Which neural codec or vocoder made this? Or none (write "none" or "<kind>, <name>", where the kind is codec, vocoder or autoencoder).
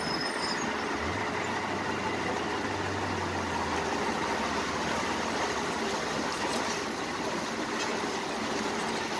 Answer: none